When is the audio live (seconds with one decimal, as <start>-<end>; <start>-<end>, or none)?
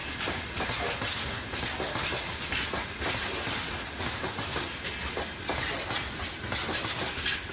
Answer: 0.0-7.5